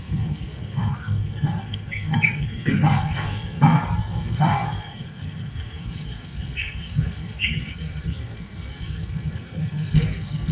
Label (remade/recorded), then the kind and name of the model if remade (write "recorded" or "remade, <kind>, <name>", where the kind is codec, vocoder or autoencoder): remade, codec, SNAC